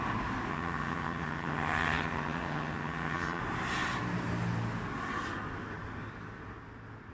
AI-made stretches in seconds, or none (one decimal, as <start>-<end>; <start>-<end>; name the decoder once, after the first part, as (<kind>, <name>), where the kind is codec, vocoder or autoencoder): 0.5-3.4 (vocoder, HiFi-GAN)